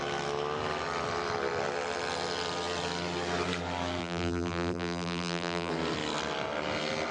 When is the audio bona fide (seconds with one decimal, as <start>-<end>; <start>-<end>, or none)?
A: 0.0-4.0; 5.7-7.1